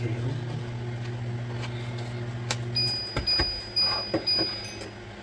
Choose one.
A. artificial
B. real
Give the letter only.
B